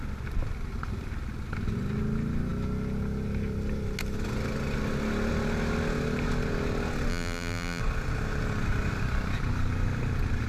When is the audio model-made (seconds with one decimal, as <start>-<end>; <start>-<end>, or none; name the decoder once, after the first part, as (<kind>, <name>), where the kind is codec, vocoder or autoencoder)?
7.1-7.8 (vocoder, BigVGAN v2)